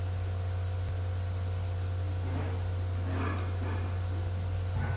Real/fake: real